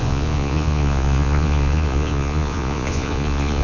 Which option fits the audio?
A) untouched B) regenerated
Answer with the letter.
B